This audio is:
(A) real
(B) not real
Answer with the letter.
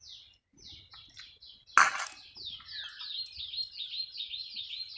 A